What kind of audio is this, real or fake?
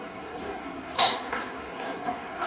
fake